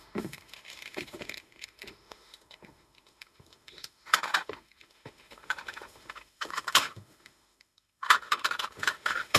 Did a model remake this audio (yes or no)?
yes